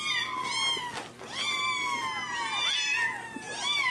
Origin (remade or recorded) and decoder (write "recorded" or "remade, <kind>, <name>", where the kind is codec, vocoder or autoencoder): recorded